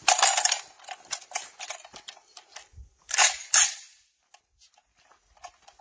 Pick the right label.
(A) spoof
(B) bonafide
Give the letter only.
B